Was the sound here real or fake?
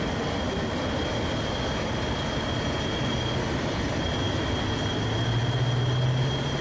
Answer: real